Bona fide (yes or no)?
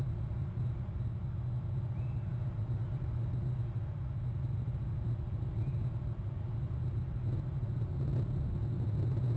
yes